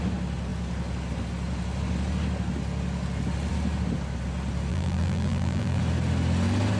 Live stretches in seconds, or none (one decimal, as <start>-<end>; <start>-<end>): 0.0-4.7; 5.8-6.8